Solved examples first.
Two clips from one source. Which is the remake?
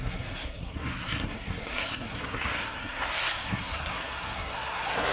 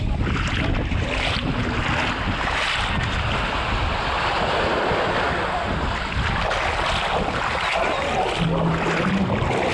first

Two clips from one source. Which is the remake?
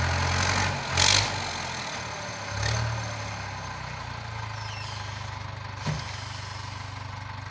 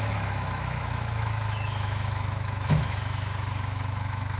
second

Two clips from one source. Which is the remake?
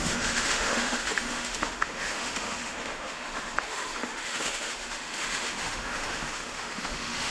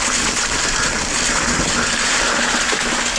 first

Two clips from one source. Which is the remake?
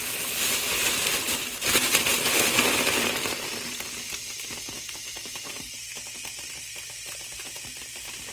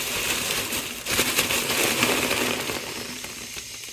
first